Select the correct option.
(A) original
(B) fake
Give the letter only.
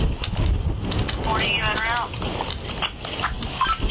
A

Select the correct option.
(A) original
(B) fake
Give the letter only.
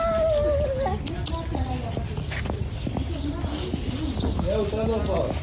A